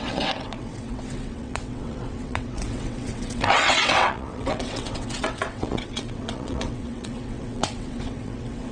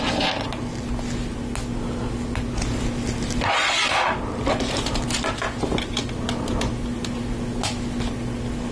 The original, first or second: second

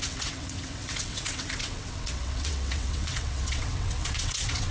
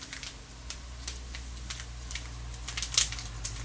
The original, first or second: second